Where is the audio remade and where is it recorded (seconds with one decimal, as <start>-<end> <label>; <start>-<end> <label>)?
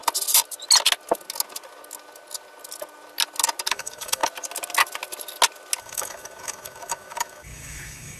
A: 0.0-3.7 recorded; 3.7-4.2 remade; 4.2-5.8 recorded; 5.8-8.2 remade